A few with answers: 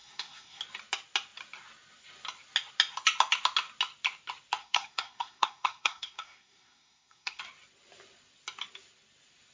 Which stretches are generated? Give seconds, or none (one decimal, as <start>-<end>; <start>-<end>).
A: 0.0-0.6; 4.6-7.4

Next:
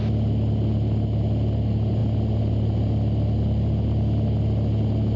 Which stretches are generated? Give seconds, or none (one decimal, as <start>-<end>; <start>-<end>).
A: none

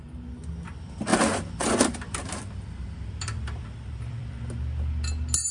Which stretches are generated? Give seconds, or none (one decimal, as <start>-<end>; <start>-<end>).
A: 1.1-4.4